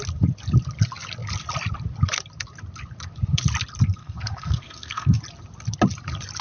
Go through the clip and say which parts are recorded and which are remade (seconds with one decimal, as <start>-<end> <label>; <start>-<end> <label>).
0.0-4.0 recorded; 4.0-5.2 remade; 5.2-6.4 recorded